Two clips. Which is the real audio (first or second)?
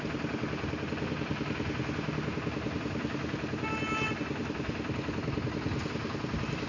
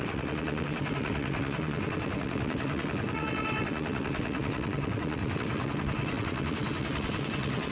first